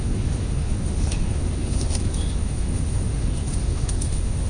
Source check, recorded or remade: remade